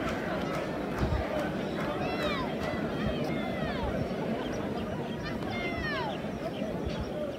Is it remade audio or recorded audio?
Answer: recorded